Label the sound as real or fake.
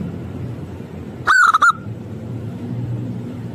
fake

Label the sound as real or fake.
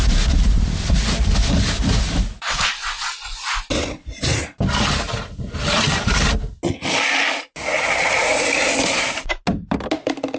real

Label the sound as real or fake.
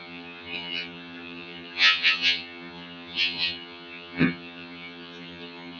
fake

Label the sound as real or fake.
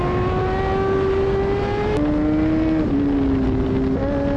real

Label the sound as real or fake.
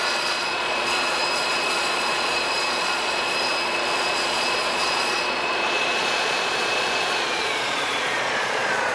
fake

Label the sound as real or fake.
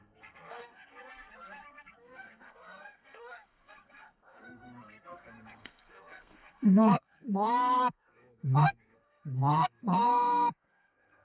fake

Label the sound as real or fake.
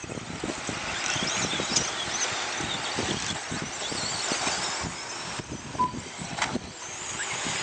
real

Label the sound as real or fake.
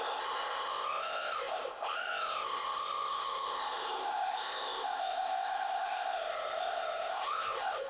fake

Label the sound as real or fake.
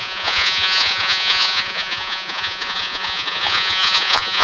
fake